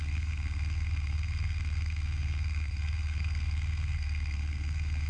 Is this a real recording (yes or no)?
no